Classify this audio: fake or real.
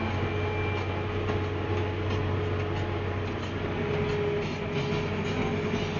real